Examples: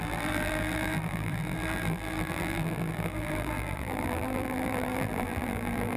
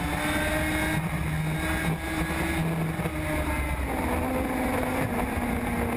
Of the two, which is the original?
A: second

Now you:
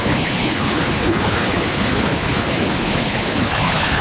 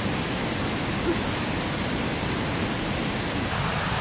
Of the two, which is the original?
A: second